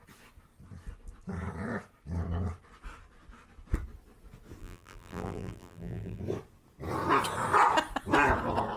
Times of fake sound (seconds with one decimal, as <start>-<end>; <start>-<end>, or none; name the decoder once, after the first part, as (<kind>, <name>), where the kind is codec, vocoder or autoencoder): 4.6-6.2 (vocoder, BigVGAN v2)